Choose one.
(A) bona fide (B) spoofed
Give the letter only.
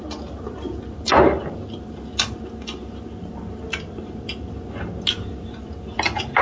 A